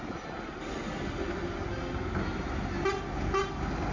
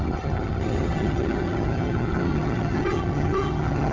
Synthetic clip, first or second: second